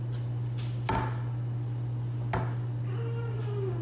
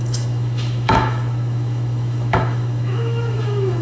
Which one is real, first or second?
first